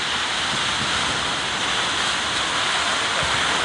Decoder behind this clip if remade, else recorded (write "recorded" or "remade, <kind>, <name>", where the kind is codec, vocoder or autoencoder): recorded